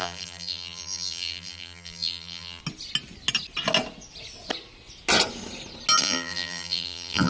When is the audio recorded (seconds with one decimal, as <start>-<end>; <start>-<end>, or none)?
2.6-6.0